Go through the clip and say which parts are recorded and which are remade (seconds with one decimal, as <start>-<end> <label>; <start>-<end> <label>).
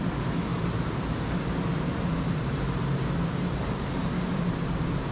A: 0.0-5.1 remade